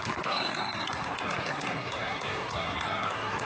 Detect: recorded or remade remade